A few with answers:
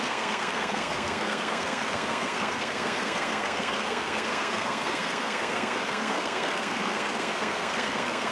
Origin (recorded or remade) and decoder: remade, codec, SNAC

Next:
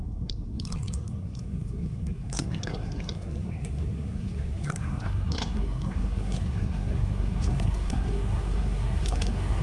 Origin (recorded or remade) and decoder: remade, codec, SNAC